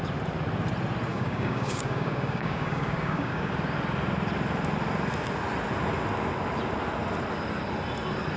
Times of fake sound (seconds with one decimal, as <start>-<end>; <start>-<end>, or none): 1.1-3.5